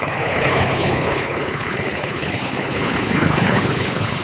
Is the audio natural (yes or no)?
no